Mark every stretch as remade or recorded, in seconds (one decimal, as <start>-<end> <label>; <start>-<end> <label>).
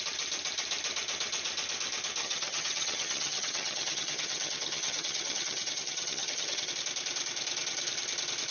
0.0-2.2 recorded; 2.2-6.7 remade; 6.7-8.5 recorded